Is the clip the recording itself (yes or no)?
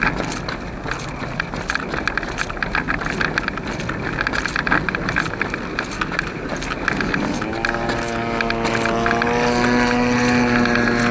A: yes